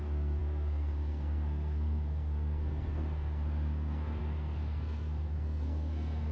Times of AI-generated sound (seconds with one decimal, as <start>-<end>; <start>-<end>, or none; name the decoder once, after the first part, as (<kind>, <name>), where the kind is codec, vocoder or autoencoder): 0.0-6.3 (codec, SNAC)